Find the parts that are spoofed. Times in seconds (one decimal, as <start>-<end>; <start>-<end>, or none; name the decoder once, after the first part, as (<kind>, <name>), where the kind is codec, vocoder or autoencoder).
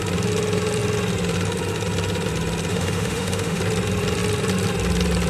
2.7-3.6 (autoencoder, DAC-VAE)